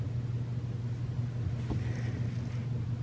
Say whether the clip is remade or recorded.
recorded